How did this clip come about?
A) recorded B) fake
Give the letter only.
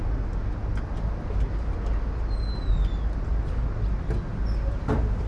A